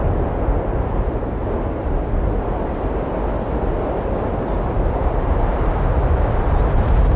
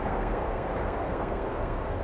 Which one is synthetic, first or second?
second